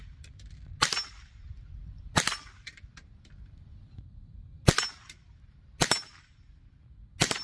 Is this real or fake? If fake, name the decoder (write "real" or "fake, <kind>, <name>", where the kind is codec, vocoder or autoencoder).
real